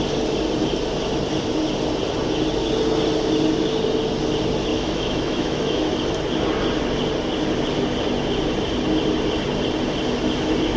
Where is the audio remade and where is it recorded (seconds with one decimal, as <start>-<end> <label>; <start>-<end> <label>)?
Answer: 0.0-4.7 recorded; 4.7-5.9 remade; 5.9-10.8 recorded